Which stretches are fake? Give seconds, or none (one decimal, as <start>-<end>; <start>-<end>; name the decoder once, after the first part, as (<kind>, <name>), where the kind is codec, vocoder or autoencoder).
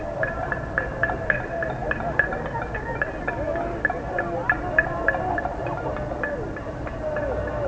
none